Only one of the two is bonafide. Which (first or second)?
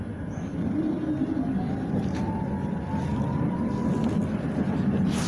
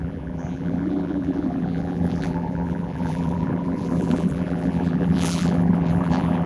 first